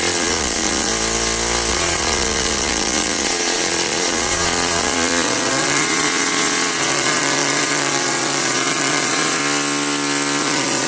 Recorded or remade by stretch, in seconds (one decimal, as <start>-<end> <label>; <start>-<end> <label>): 0.0-0.9 remade; 0.9-1.7 recorded; 1.7-9.4 remade; 9.4-10.4 recorded; 10.4-10.9 remade